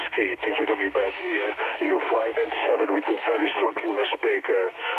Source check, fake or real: fake